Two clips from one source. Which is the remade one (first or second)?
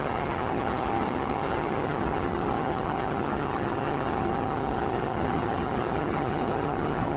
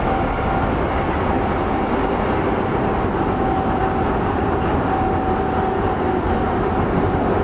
first